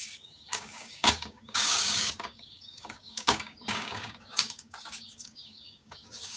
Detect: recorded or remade remade